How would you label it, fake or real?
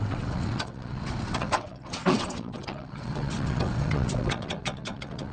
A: fake